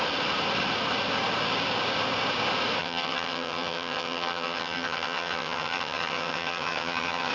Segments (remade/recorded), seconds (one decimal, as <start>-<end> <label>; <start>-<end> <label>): 0.0-2.8 recorded; 2.8-7.3 remade